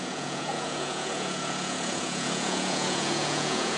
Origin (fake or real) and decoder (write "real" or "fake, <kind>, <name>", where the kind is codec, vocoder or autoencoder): fake, vocoder, Vocos